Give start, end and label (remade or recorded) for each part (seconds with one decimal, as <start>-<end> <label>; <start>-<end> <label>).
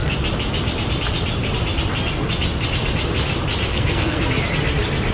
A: 0.0-3.7 recorded; 3.7-4.2 remade; 4.2-5.1 recorded